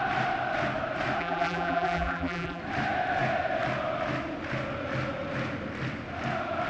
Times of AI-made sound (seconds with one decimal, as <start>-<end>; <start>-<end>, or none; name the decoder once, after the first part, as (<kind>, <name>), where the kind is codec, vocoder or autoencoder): 1.2-2.6 (vocoder, BigVGAN v2)